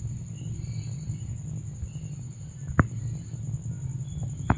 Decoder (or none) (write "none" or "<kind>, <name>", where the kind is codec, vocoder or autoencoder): none